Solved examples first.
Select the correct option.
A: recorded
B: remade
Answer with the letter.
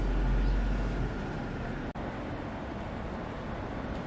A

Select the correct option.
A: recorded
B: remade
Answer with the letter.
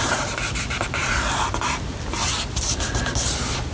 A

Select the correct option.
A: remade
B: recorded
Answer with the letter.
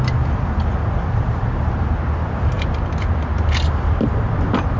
B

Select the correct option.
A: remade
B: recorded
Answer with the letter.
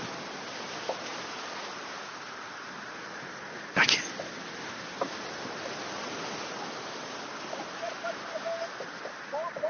B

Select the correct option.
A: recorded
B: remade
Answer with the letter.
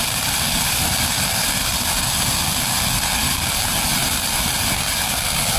A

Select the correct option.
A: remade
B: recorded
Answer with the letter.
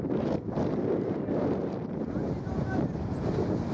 B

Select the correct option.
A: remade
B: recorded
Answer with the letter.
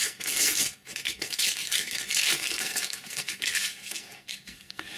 A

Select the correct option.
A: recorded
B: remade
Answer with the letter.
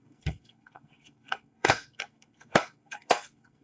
B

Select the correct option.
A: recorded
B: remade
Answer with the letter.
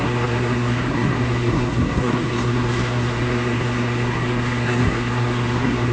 B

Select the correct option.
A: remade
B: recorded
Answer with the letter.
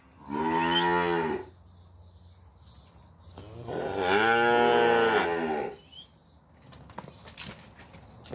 B